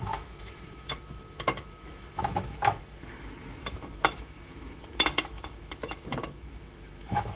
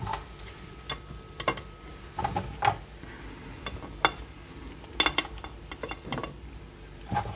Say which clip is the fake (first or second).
first